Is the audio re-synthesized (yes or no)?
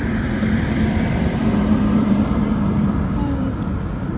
yes